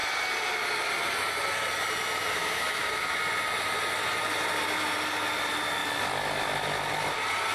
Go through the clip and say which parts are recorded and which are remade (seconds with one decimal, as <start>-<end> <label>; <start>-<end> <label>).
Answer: 0.0-2.3 recorded; 2.3-3.2 remade; 3.2-7.5 recorded